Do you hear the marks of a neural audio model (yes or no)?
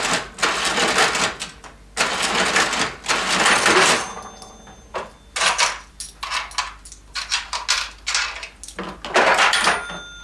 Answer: no